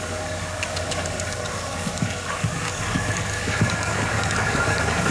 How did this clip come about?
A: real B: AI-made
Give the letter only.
B